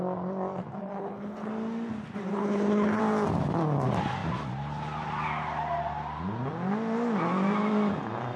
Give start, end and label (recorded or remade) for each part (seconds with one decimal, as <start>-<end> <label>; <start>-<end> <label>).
0.0-0.8 recorded; 0.8-1.5 remade; 1.5-2.3 recorded; 2.3-3.0 remade; 3.0-8.4 recorded